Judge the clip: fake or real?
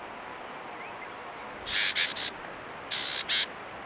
real